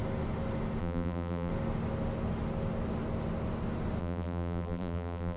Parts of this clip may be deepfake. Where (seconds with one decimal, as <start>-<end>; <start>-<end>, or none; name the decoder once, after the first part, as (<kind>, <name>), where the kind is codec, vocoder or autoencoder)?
0.8-1.5 (vocoder, BigVGAN v2); 4.0-5.4